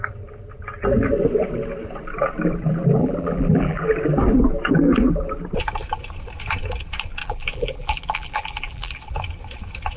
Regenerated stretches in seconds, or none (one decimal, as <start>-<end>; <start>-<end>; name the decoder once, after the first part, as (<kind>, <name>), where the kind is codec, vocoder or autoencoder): 3.0-3.8 (vocoder, BigVGAN v2); 7.2-9.0